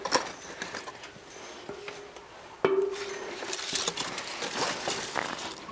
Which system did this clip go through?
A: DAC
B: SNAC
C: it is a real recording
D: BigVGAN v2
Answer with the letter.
C